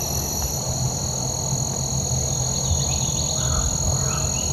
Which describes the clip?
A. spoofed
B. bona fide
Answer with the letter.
B